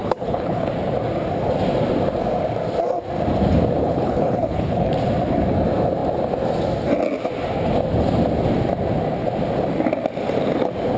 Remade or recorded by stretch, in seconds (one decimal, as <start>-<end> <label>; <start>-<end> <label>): 0.0-0.7 remade; 0.7-3.8 recorded; 3.8-4.9 remade; 4.9-11.0 recorded